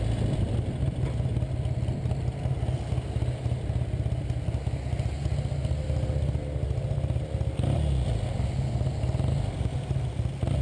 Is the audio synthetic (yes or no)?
no